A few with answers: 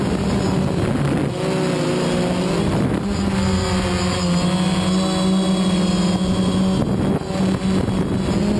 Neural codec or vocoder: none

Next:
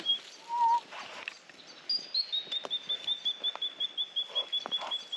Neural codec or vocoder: none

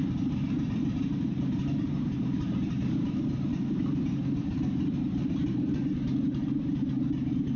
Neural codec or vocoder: vocoder, BigVGAN v2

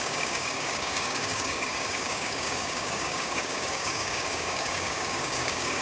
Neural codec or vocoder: codec, DAC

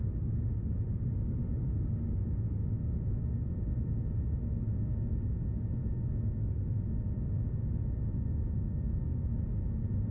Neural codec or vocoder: vocoder, BigVGAN v2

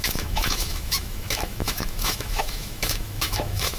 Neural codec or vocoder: autoencoder, DAC-VAE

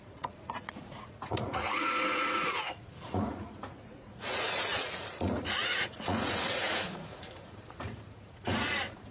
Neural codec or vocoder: vocoder, Vocos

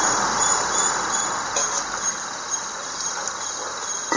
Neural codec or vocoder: none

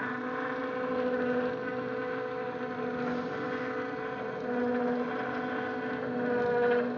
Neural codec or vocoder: none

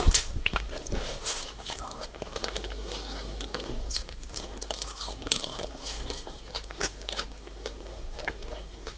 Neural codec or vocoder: codec, SNAC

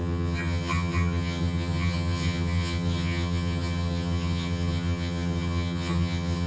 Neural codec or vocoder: vocoder, HiFi-GAN